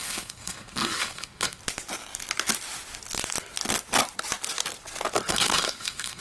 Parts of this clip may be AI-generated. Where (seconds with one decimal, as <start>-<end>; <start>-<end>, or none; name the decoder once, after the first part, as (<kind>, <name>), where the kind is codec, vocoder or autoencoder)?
0.0-1.6 (codec, SNAC); 5.3-6.2